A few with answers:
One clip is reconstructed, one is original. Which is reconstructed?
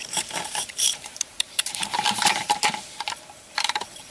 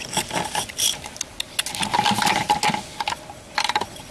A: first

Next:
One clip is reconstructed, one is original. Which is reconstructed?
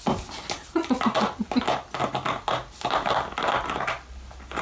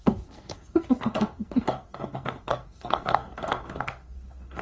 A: second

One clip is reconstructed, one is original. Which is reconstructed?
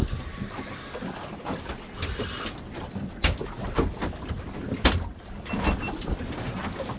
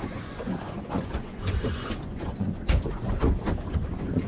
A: second